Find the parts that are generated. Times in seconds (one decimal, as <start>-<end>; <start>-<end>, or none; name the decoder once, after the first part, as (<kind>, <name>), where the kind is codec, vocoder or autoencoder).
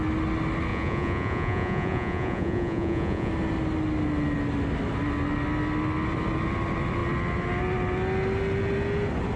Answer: 0.7-3.3 (vocoder, Vocos)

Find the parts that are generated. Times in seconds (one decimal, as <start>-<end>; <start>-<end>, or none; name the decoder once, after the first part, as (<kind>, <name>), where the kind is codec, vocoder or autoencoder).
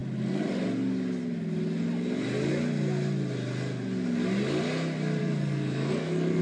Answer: 5.2-6.4 (codec, SNAC)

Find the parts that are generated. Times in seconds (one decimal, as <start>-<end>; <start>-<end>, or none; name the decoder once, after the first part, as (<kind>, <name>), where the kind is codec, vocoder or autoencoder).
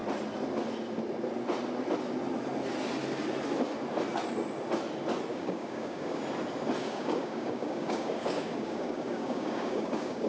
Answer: 5.3-6.2 (codec, DAC); 6.8-10.3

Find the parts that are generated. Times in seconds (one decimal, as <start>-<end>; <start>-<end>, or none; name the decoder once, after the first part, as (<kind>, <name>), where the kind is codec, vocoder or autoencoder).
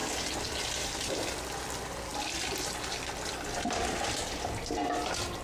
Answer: 0.0-1.1 (vocoder, BigVGAN v2)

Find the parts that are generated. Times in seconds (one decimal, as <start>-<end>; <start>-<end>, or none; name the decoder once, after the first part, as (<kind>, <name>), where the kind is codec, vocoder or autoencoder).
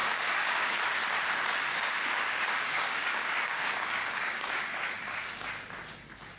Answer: 0.0-0.7 (codec, DAC); 1.7-5.5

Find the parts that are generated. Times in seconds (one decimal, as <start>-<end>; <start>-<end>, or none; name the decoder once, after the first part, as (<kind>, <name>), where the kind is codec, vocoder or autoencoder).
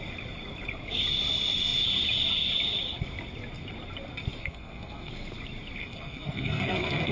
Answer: 4.4-5.1 (codec, SNAC); 5.8-7.1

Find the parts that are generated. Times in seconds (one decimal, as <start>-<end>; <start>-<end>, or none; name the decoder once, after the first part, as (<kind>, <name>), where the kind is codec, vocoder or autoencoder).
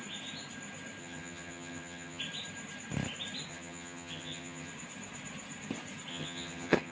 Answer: 1.0-2.2 (vocoder, HiFi-GAN); 3.5-4.7; 6.1-6.9